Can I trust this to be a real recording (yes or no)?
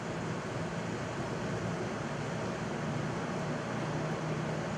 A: yes